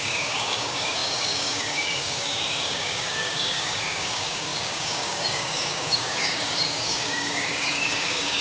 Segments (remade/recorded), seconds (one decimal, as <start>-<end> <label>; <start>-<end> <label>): 0.0-8.4 remade